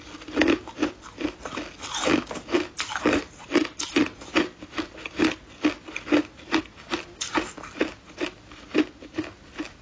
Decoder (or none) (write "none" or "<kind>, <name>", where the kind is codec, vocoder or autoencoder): none